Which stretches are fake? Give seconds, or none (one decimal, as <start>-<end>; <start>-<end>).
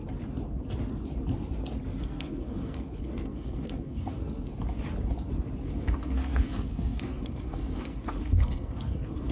2.0-4.5; 5.9-9.3